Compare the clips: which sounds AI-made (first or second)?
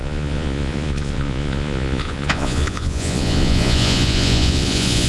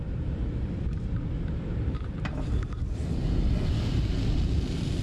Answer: first